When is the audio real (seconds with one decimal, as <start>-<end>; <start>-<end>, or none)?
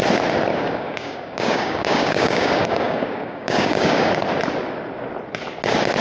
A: 0.0-0.5; 4.1-6.0